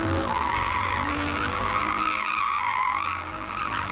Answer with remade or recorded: remade